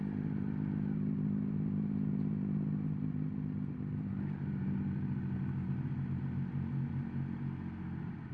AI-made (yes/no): no